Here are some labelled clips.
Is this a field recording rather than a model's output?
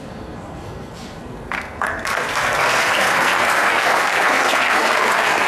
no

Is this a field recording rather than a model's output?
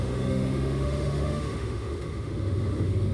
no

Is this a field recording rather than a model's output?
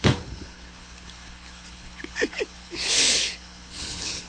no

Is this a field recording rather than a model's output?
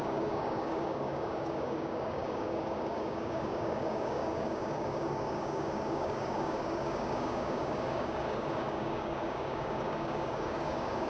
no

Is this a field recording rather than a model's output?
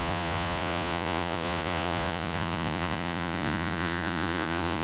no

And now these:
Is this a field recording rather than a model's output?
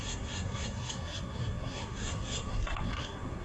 no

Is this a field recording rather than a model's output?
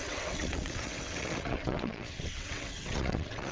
no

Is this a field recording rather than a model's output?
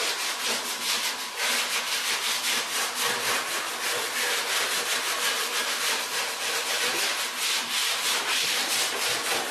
no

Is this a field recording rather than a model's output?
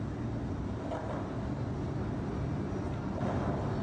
yes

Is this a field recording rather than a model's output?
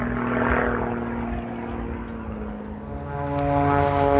yes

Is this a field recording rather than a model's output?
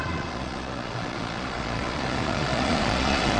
no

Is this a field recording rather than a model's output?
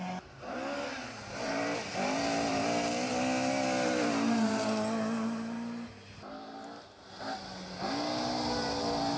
yes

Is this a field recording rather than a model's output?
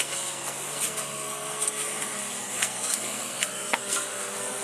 no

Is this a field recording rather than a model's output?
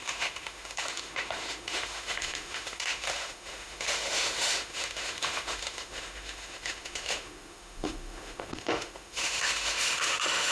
no